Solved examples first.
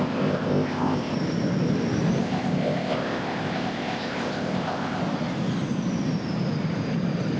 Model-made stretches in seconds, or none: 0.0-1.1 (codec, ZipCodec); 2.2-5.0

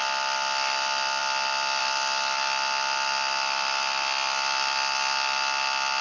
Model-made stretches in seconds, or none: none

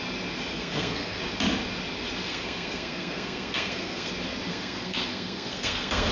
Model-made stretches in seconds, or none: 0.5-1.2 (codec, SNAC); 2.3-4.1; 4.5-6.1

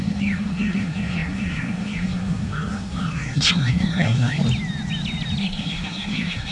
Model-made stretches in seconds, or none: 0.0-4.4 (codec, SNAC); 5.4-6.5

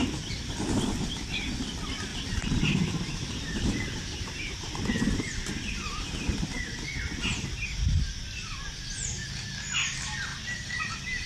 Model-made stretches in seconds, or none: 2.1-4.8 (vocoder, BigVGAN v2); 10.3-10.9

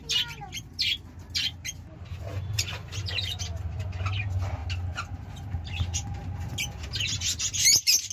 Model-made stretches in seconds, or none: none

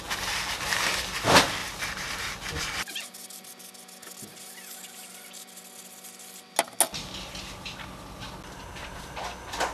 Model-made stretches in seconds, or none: 1.6-2.5 (vocoder, BigVGAN v2)